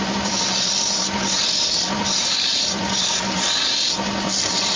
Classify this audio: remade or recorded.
remade